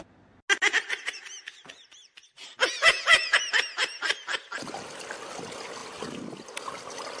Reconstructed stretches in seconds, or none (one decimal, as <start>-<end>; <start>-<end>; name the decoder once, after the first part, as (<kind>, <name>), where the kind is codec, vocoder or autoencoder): 2.8-3.4 (vocoder, Vocos)